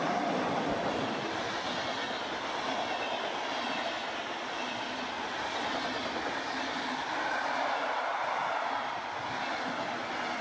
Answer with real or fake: real